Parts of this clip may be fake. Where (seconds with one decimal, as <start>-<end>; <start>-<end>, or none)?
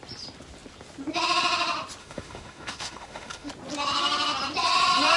2.0-3.5